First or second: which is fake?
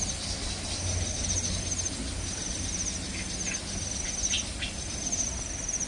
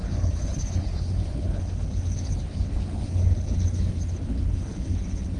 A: second